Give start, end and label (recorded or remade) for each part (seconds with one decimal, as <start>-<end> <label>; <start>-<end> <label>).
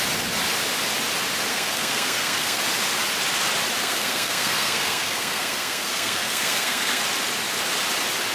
0.0-1.5 recorded; 1.5-2.6 remade; 2.6-3.8 recorded; 3.8-7.0 remade; 7.0-8.3 recorded